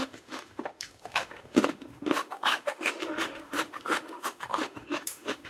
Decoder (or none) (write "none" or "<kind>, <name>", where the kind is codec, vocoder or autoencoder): autoencoder, DAC-VAE